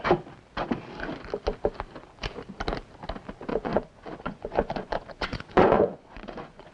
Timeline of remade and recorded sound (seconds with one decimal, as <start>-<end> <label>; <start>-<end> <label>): 0.0-3.5 recorded; 3.5-6.7 remade